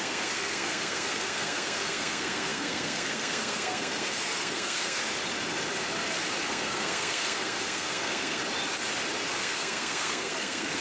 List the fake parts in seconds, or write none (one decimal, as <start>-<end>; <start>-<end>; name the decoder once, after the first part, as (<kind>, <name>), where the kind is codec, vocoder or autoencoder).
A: 0.0-5.0 (codec, SNAC); 6.4-8.4; 9.4-10.8